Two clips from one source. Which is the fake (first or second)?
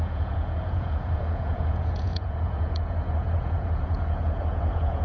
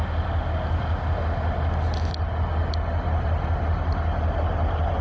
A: first